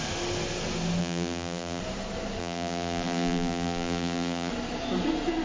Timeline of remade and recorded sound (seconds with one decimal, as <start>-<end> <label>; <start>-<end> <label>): 0.0-1.0 recorded; 1.0-1.8 remade; 1.8-2.4 recorded; 2.4-4.5 remade; 4.5-5.4 recorded